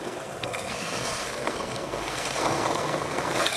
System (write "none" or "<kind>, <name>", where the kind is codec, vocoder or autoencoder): codec, SNAC